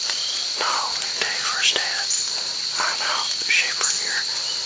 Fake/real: real